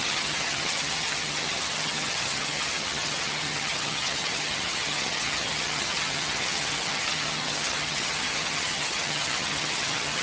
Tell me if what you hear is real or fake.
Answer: fake